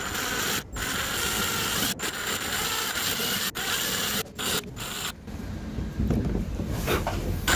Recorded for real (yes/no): yes